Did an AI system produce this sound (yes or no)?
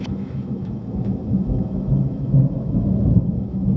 yes